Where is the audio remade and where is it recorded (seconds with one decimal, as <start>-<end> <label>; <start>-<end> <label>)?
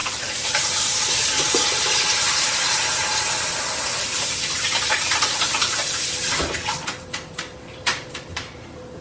0.0-9.0 remade